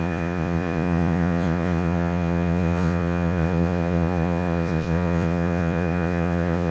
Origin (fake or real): fake